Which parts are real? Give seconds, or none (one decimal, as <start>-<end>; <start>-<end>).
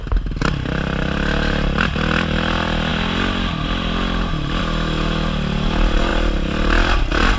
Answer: 0.0-7.4